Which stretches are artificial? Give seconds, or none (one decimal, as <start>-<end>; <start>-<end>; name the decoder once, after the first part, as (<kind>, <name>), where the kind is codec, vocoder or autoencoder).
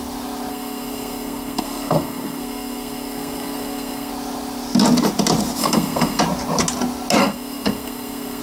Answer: 0.5-4.1 (codec, SNAC); 5.6-6.2; 7.2-8.4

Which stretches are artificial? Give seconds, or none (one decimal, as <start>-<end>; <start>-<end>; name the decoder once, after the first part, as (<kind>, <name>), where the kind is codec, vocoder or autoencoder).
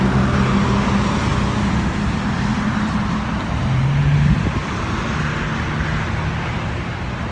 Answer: none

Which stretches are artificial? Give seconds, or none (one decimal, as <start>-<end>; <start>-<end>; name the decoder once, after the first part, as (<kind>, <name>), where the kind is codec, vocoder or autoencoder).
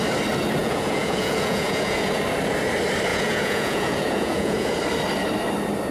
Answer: 0.6-2.2 (vocoder, Vocos); 3.1-4.7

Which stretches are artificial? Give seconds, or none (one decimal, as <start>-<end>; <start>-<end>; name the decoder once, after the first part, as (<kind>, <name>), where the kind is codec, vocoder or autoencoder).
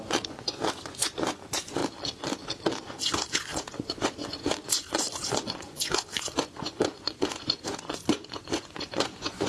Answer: 0.0-1.8 (vocoder, Vocos); 2.8-9.5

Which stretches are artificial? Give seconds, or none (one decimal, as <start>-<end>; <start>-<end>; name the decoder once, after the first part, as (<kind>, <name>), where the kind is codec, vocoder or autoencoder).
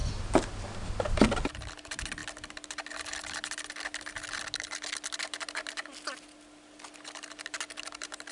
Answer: none